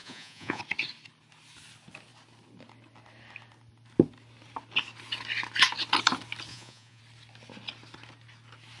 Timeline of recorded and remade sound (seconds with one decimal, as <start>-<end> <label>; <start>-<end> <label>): 0.0-0.6 remade; 0.6-6.5 recorded; 6.5-7.0 remade; 7.0-8.8 recorded